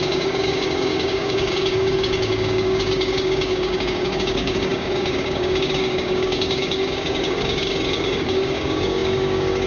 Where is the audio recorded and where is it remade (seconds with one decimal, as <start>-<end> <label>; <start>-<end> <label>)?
0.0-9.7 remade